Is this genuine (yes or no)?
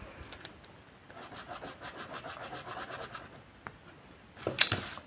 yes